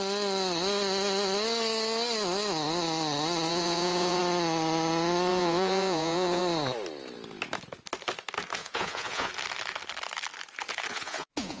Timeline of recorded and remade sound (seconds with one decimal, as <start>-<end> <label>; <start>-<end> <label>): 0.0-3.5 recorded; 3.5-4.2 remade; 4.2-5.3 recorded; 5.3-6.4 remade; 6.4-8.6 recorded; 8.6-9.3 remade; 9.3-10.9 recorded; 10.9-11.6 remade